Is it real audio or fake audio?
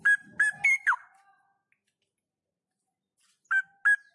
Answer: real